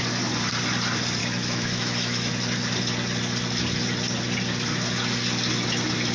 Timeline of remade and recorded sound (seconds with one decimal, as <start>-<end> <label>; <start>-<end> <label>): 0.0-1.2 recorded; 1.2-2.3 remade; 2.3-6.1 recorded

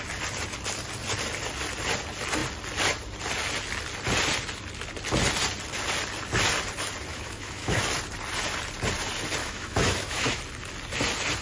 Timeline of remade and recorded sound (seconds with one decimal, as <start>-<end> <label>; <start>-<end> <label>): 0.0-7.1 recorded; 7.1-7.8 remade; 7.8-9.4 recorded; 9.4-10.4 remade; 10.4-11.4 recorded

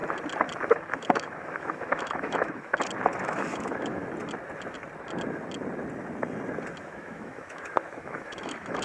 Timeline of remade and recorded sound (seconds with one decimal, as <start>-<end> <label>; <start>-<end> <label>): 0.0-0.7 recorded; 0.7-2.7 remade; 2.7-3.2 recorded; 3.2-4.0 remade; 4.0-6.8 recorded; 6.8-8.8 remade

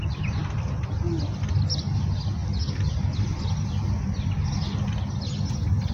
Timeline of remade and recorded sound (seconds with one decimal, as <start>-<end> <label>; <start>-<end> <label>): 0.0-5.9 recorded

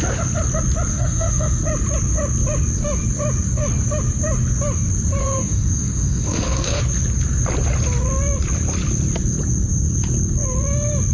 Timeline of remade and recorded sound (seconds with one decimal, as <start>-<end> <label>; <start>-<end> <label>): 0.0-0.9 recorded; 0.9-1.6 remade; 1.6-5.2 recorded; 5.2-6.8 remade; 6.8-11.1 recorded

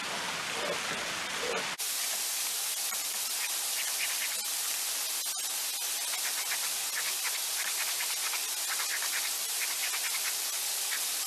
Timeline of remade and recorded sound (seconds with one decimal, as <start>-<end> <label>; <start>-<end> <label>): 0.0-11.3 recorded

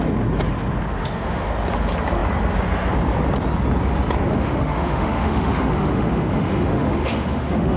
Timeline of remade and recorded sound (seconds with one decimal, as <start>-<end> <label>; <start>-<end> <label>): 0.0-1.0 recorded; 1.0-1.5 remade; 1.5-4.3 recorded; 4.3-7.8 remade

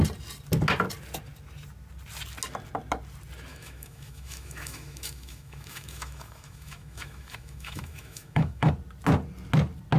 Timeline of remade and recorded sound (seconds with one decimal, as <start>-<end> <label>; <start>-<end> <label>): 0.0-3.5 recorded; 3.5-8.7 remade; 8.7-10.0 recorded